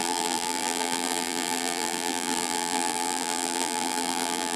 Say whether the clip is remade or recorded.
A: remade